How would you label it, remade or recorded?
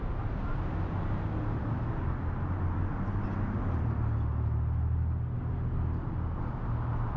recorded